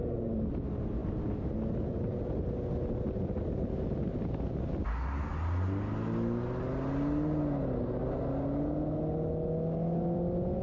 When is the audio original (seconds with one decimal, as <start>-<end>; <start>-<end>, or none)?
0.0-10.6